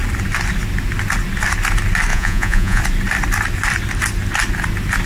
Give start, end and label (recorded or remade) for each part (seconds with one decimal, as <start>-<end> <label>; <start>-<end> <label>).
0.0-2.1 recorded; 2.1-2.8 remade; 2.8-5.1 recorded